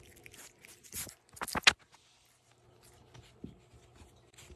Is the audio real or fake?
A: real